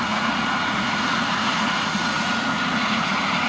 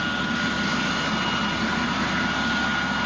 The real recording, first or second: second